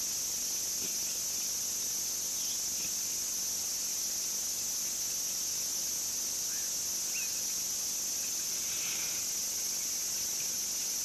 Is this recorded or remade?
recorded